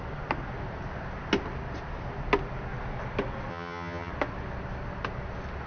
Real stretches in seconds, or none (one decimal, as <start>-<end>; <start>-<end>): 0.0-3.5; 4.1-5.7